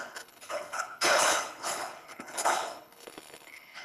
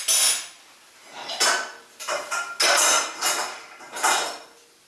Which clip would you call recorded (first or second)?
second